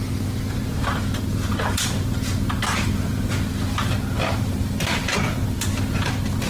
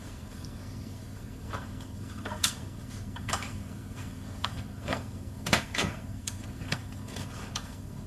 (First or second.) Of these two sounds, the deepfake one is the second